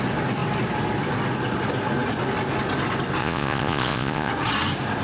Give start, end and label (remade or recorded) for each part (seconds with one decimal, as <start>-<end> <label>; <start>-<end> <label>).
0.0-3.2 recorded; 3.2-4.3 remade; 4.3-5.0 recorded

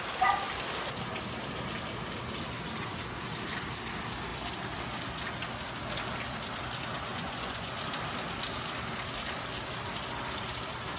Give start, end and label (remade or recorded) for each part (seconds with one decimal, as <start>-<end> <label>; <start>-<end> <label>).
0.0-7.1 recorded; 7.1-7.7 remade; 7.7-11.0 recorded